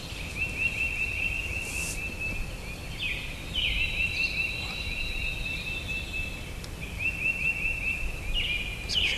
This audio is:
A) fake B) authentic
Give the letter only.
B